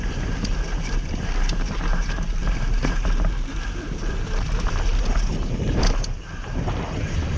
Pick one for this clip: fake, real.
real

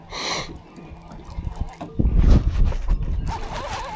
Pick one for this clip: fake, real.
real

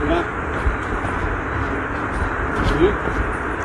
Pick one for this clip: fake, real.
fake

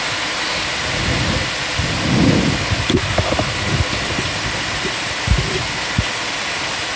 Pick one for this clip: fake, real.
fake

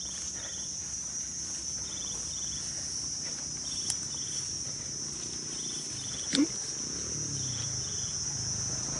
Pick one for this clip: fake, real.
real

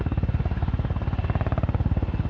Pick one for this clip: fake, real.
real